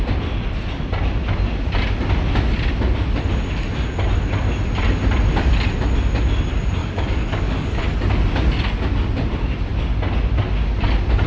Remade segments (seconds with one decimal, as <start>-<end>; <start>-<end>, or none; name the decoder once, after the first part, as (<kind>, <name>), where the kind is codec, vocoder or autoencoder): 6.8-7.8 (codec, DAC)